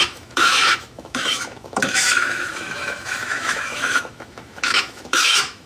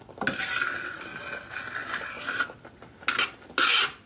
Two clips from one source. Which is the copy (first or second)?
first